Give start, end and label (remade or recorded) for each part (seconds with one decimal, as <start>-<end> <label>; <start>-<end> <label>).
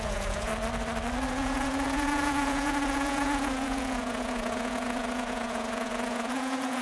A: 0.0-0.5 remade; 0.5-1.3 recorded; 1.3-6.8 remade